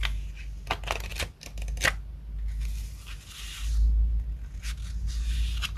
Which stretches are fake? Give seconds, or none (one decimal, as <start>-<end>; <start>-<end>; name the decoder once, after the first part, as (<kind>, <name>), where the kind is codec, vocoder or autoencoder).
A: none